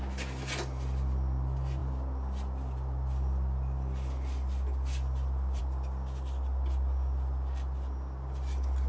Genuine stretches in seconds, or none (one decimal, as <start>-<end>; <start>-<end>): 0.0-8.9

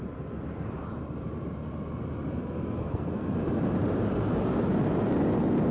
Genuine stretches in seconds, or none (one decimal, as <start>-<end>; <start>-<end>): 0.0-2.8; 3.3-5.7